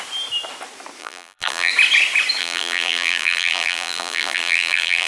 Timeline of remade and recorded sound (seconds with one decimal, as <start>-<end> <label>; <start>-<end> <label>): 0.0-1.0 recorded; 1.0-1.7 remade; 1.7-2.4 recorded; 2.4-5.1 remade